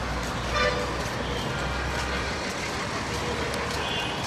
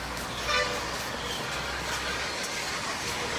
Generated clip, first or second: second